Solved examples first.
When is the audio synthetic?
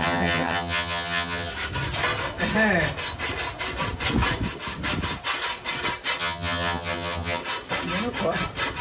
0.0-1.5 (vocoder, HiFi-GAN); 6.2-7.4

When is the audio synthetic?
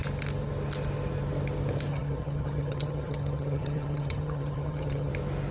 1.9-5.1 (vocoder, HiFi-GAN)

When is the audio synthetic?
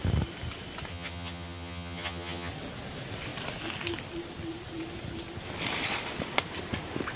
0.9-2.5 (vocoder, HiFi-GAN)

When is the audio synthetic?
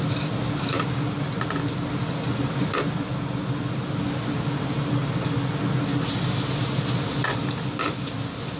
none